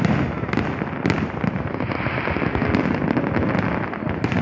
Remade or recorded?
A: recorded